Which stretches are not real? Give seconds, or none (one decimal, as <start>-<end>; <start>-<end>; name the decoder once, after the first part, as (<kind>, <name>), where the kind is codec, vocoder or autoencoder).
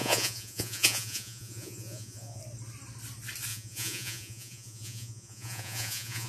0.0-2.4 (vocoder, Vocos); 3.5-6.3